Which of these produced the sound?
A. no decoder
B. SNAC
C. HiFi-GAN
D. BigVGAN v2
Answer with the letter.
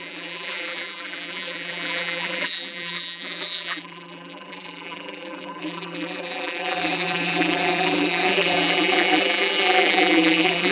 D